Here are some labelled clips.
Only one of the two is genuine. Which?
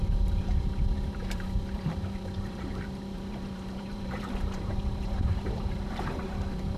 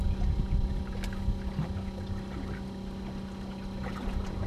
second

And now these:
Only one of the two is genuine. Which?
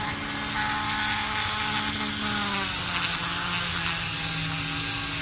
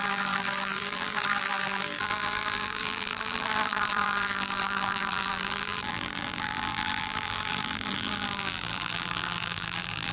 first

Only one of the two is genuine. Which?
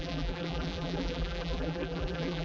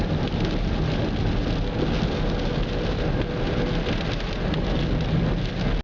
second